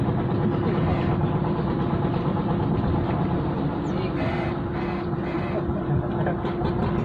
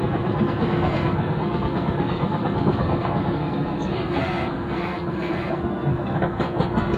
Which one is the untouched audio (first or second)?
first